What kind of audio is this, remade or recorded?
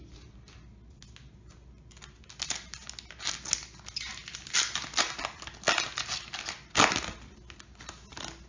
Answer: recorded